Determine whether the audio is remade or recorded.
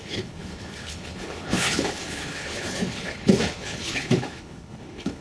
remade